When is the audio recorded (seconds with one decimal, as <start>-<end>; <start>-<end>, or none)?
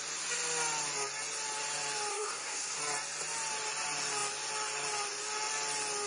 0.0-2.1; 2.8-6.1